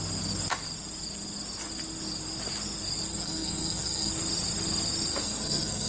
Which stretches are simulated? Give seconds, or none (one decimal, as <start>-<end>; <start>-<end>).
3.1-4.1; 5.1-5.9